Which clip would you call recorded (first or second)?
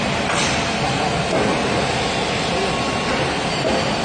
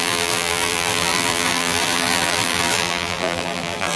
first